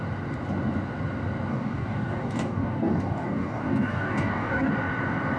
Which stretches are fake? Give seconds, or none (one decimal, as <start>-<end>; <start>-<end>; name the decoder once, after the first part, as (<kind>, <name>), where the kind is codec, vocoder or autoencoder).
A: 1.5-4.7 (codec, DAC)